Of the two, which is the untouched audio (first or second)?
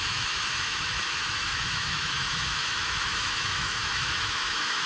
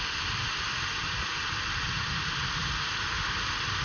second